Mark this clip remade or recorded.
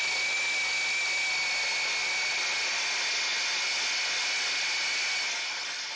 recorded